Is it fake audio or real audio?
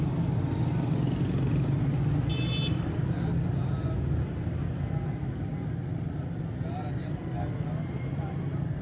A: real